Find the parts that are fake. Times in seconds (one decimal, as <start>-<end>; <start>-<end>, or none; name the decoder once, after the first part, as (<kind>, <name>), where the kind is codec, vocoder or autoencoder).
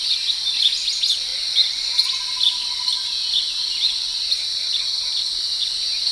none